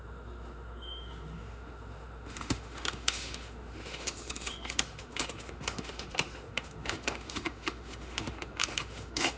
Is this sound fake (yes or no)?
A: yes